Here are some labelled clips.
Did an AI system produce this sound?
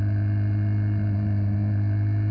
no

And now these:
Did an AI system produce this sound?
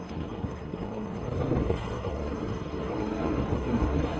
yes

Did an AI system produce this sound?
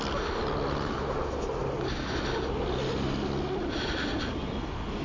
no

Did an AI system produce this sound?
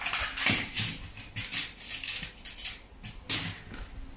no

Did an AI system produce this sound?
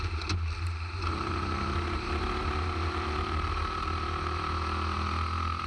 no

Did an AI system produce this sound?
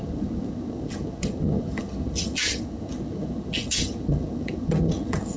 yes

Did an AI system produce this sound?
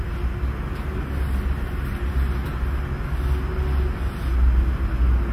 no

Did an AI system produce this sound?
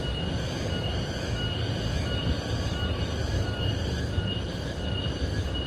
no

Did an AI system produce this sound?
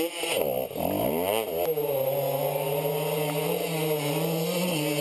no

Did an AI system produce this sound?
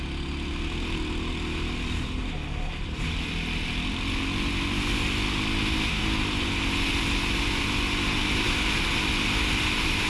no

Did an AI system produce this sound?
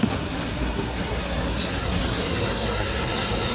yes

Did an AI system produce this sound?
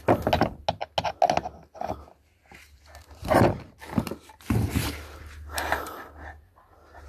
no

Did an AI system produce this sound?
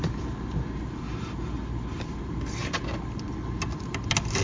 no